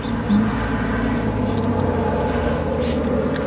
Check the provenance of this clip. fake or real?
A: real